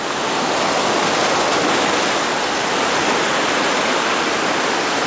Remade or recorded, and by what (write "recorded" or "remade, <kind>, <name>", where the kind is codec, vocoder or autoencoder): recorded